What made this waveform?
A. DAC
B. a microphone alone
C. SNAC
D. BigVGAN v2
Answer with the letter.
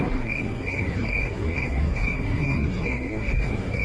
C